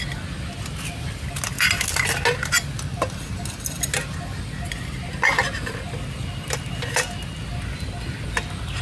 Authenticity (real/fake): real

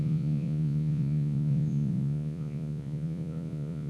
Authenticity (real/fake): fake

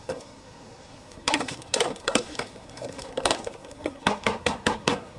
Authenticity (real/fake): fake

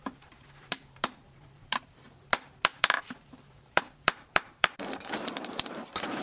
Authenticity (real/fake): fake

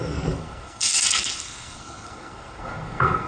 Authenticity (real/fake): fake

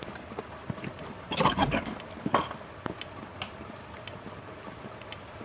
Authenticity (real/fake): real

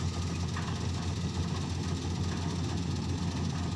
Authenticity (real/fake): real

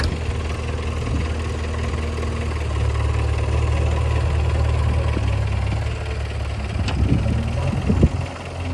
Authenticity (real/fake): real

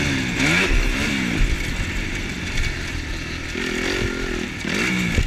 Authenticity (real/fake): real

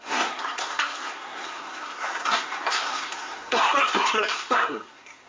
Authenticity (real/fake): fake